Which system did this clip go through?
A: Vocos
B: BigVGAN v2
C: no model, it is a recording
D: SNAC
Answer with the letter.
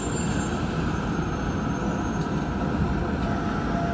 C